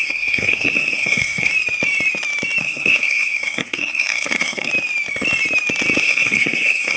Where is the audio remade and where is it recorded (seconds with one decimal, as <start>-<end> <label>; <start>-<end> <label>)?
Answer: 0.0-1.5 remade; 1.5-2.6 recorded; 2.6-4.7 remade; 4.7-6.0 recorded; 6.0-7.0 remade